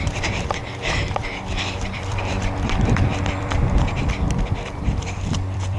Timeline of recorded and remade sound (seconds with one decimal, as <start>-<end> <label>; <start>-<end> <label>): 0.0-5.8 remade